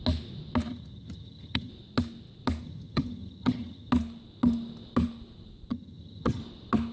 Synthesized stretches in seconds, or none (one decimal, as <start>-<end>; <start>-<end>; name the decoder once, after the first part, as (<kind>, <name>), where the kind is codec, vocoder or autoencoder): 0.7-1.7 (vocoder, HiFi-GAN); 2.6-3.9; 5.7-6.4